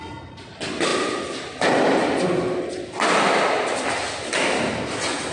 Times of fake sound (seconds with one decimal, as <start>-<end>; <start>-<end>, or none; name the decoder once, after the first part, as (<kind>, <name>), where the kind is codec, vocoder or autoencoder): none